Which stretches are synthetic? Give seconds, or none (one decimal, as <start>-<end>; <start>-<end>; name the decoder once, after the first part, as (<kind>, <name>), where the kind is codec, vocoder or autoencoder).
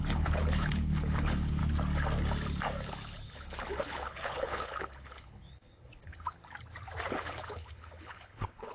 0.0-1.6 (codec, HILCodec); 3.3-6.4; 7.1-8.7